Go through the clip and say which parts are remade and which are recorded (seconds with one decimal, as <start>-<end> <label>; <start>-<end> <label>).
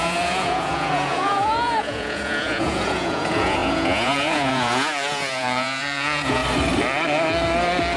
0.0-6.4 remade; 6.4-8.0 recorded